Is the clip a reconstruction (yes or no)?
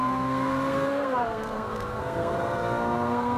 yes